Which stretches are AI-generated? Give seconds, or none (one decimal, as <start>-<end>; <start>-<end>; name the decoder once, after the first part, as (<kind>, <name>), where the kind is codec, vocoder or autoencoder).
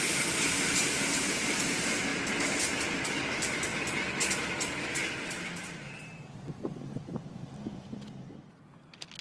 0.0-3.7 (vocoder, BigVGAN v2); 4.8-7.5